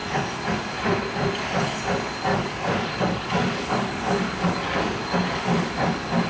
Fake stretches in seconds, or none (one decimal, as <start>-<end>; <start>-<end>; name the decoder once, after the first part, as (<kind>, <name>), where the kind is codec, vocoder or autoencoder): 2.3-5.7 (codec, DAC)